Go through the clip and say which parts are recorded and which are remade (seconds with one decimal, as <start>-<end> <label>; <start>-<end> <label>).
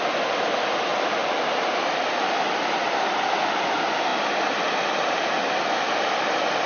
0.0-6.7 recorded